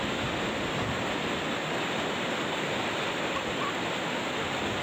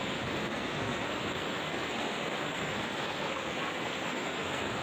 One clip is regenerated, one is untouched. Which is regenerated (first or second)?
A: second